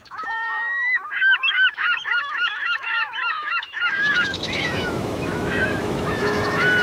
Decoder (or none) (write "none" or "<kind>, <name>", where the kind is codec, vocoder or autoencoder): autoencoder, DAC-VAE